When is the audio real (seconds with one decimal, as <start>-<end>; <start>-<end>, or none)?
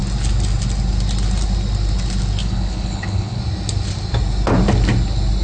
0.0-2.4; 3.4-5.4